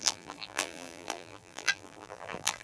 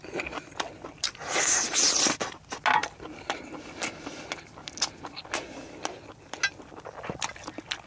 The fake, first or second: first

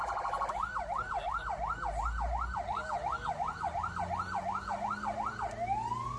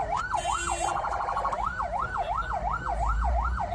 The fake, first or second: second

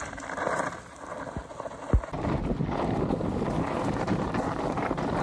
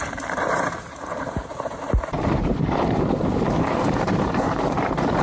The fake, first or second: second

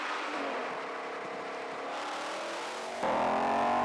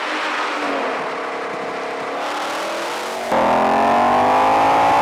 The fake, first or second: first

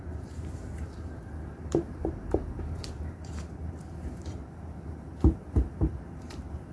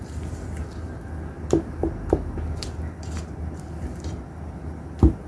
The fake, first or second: first